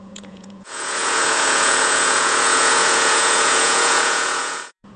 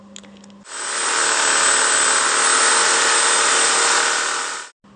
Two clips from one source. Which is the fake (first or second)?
first